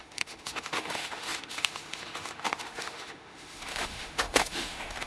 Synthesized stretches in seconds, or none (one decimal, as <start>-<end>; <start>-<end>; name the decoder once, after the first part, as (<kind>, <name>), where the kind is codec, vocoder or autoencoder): 0.0-5.1 (autoencoder, DAC-VAE)